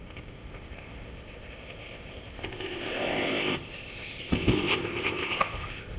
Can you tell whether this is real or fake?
fake